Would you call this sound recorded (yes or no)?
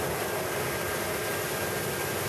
yes